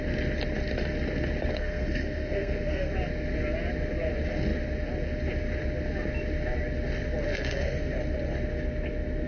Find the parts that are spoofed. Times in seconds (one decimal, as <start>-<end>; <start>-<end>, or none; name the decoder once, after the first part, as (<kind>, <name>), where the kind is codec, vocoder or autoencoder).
1.5-2.9 (codec, SNAC); 7.3-7.8